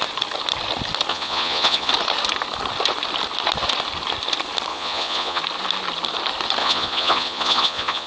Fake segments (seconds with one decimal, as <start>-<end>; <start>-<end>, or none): 1.1-1.9; 4.7-5.4; 6.6-8.1